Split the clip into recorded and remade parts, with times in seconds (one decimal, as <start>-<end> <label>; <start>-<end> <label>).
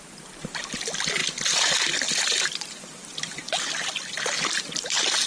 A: 0.0-5.3 recorded